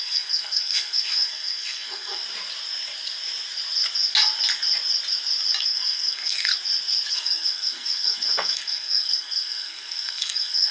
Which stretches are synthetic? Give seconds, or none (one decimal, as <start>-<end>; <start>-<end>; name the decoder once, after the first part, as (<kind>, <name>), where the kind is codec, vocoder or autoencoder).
0.0-2.2 (codec, SNAC); 5.6-6.5; 7.1-10.7